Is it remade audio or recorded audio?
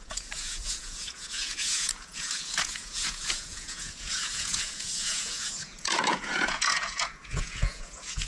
remade